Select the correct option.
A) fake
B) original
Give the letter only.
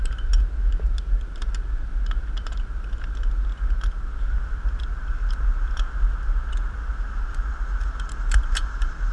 B